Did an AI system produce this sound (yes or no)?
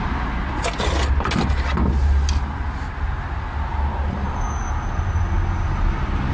no